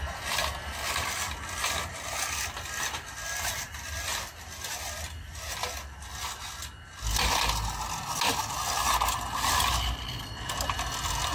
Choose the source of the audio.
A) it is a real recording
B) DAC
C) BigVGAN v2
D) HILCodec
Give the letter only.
A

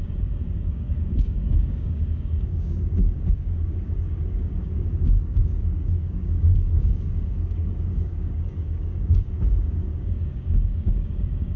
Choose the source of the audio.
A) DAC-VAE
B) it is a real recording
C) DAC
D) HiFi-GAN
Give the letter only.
C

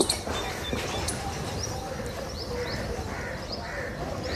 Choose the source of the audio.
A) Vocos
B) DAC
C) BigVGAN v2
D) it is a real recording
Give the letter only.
D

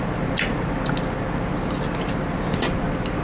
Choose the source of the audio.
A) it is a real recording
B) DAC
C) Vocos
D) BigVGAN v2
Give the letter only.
A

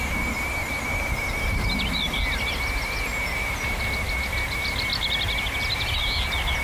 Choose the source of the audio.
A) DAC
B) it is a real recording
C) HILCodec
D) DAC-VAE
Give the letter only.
B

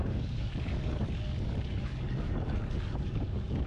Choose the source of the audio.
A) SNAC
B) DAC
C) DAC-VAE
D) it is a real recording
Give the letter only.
B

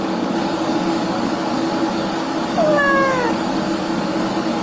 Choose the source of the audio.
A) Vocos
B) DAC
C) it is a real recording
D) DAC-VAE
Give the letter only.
B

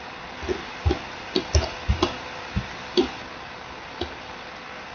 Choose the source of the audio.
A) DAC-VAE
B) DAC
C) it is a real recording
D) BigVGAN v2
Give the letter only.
C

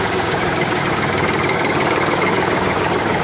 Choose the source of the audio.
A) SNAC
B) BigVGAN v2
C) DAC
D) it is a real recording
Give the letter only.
C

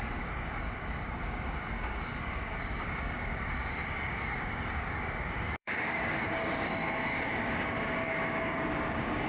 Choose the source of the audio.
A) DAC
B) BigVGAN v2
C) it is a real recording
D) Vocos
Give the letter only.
A